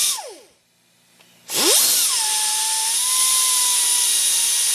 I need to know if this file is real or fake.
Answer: real